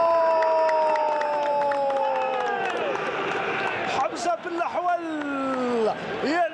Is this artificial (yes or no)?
no